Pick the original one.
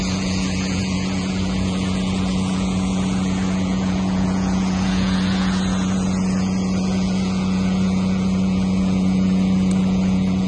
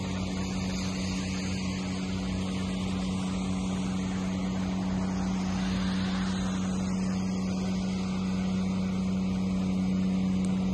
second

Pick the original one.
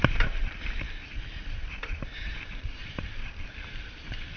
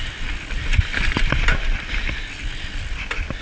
second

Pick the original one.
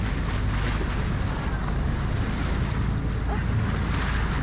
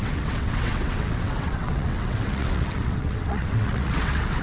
first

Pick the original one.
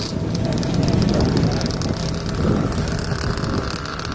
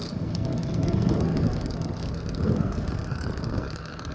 first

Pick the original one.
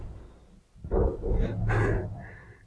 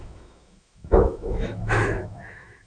first